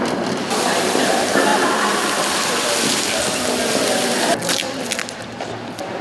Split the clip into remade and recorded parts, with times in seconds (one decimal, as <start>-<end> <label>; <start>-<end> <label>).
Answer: 0.0-1.5 remade; 1.5-3.7 recorded; 3.7-6.0 remade